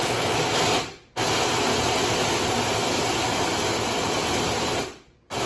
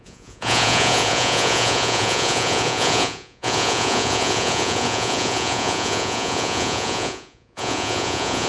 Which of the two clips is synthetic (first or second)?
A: second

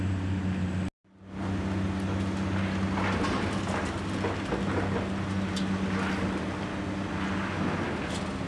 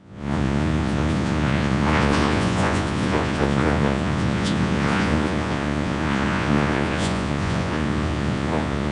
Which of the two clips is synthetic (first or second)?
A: second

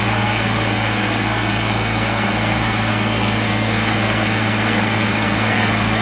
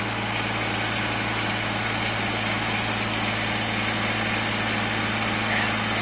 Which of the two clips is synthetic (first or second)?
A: first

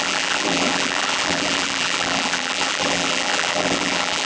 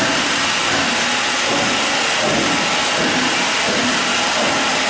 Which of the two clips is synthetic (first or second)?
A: first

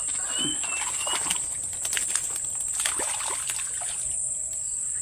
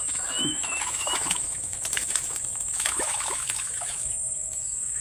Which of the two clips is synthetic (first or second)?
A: second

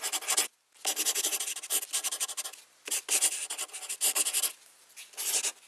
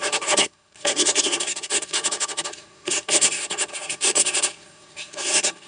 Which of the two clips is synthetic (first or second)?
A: second